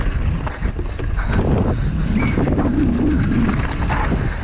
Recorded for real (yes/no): yes